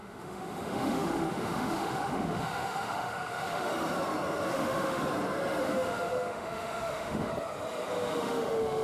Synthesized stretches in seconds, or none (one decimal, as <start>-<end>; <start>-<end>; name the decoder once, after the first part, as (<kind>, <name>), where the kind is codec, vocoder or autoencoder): 0.0-3.7 (autoencoder, DAC-VAE); 4.5-5.0; 5.6-7.3; 7.9-8.8